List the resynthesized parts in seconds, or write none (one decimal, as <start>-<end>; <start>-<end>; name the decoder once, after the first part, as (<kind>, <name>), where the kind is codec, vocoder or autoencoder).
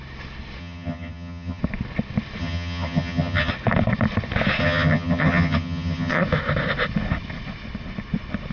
0.6-1.6 (vocoder, HiFi-GAN); 2.4-3.5; 4.6-6.2